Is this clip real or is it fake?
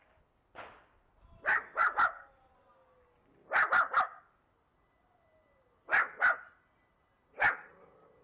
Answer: real